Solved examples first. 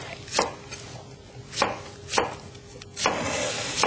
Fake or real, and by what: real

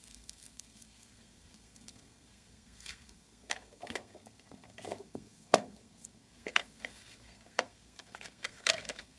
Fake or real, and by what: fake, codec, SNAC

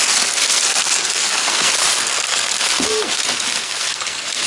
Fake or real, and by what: fake, codec, SNAC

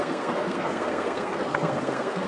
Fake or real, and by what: fake, codec, SNAC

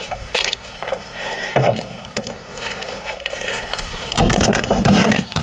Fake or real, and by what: fake, codec, SNAC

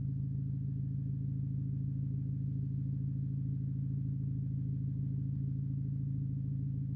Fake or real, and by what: real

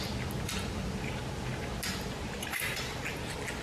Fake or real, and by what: real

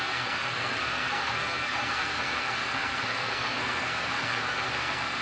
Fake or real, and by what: fake, codec, SNAC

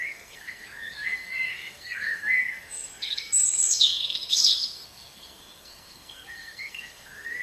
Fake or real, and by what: fake, codec, SNAC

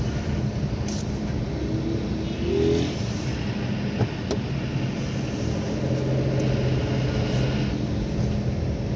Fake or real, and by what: real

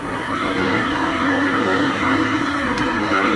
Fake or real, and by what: fake, codec, SNAC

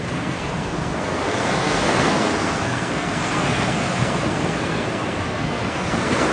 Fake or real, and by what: fake, codec, SNAC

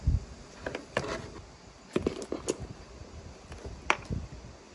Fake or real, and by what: real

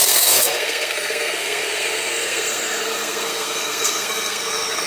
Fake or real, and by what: fake, codec, SNAC